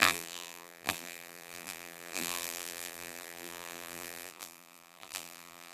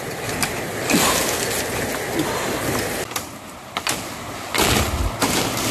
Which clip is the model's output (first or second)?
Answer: first